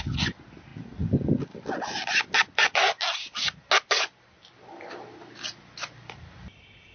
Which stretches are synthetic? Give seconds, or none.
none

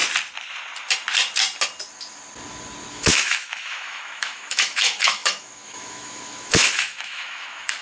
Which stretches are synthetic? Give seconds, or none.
2.9-7.8 (autoencoder, DAC-VAE)

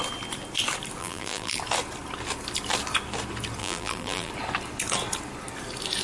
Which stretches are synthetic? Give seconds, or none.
1.0-1.6 (vocoder, BigVGAN v2); 3.6-4.3